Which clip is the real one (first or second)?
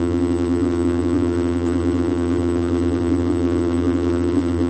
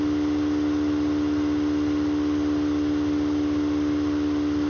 second